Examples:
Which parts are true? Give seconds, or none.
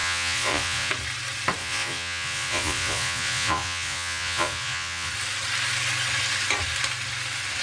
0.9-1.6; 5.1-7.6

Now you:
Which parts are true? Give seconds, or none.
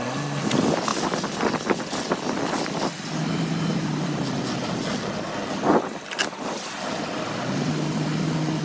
0.0-8.6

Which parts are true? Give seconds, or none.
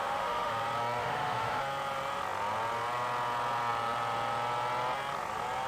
0.5-1.0; 1.6-5.7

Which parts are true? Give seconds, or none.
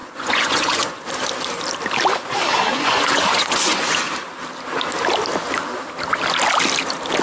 1.1-2.7; 3.8-7.2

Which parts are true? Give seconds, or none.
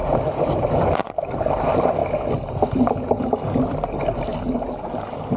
0.0-0.7; 2.0-2.5; 4.3-4.8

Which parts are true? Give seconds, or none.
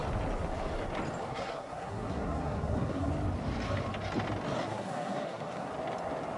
0.0-1.3; 3.1-4.6; 5.7-6.4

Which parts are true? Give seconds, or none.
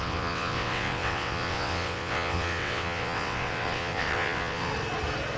4.7-5.4